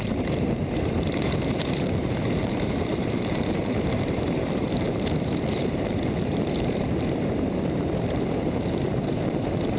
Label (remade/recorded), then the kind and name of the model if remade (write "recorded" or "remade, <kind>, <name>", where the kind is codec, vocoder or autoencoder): remade, vocoder, BigVGAN v2